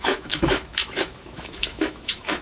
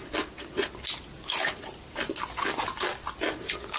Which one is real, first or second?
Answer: second